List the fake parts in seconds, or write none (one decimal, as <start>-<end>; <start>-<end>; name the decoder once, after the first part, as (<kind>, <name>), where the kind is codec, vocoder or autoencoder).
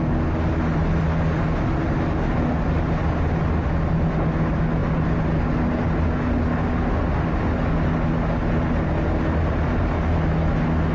none